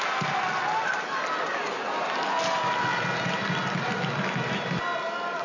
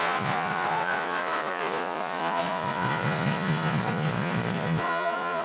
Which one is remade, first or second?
second